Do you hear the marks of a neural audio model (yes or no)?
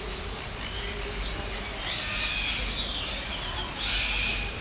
no